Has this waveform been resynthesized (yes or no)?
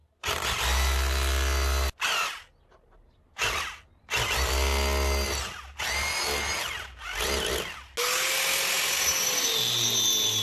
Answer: no